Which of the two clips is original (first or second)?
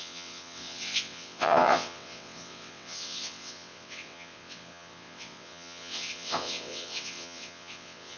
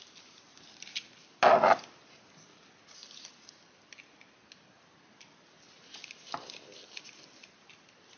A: second